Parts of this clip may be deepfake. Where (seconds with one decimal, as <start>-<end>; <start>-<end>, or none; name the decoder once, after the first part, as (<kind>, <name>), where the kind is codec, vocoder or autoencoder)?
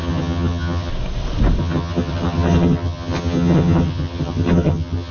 0.0-0.9 (vocoder, HiFi-GAN); 1.6-5.1